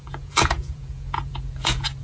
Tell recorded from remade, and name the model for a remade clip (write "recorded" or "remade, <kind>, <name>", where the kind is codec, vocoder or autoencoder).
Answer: remade, vocoder, Vocos